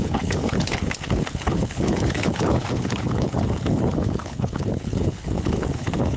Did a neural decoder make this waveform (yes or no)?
yes